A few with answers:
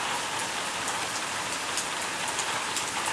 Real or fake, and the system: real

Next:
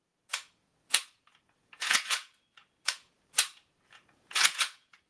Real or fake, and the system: fake, vocoder, Vocos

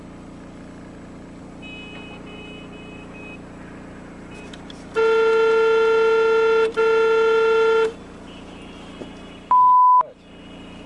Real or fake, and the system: real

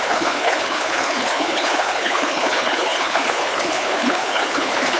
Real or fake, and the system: fake, codec, HILCodec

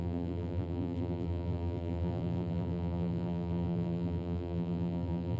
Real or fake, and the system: fake, vocoder, BigVGAN v2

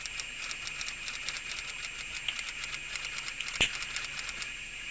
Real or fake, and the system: real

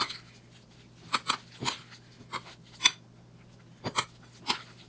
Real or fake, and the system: real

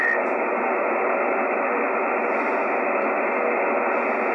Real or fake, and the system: real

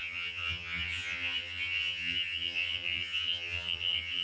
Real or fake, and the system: fake, vocoder, HiFi-GAN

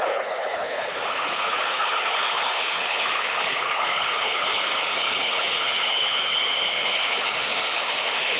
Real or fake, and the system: fake, codec, HILCodec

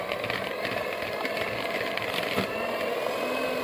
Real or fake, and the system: real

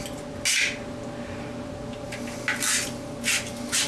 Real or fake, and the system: real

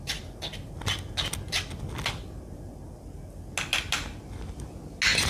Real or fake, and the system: real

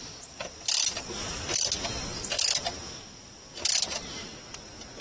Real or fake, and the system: real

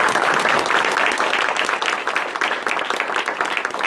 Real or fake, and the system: real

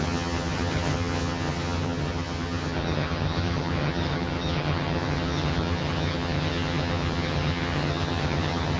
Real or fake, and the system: fake, vocoder, HiFi-GAN